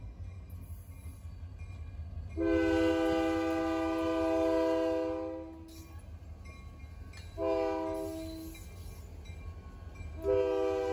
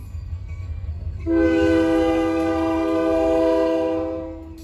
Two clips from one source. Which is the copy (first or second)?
second